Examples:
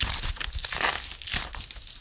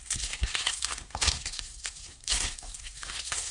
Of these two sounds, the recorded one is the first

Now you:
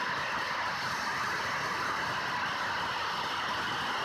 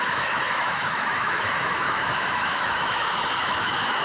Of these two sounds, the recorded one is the first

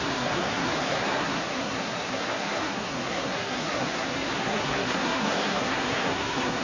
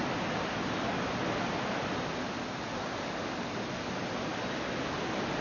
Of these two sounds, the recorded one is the second